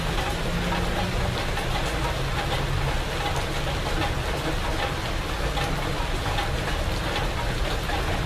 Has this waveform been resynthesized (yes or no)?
no